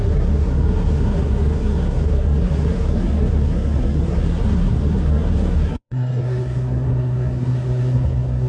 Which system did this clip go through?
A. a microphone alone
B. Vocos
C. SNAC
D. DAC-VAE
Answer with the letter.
C